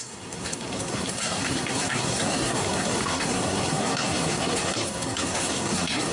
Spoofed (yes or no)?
yes